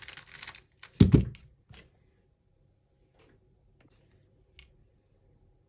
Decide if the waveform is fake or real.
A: real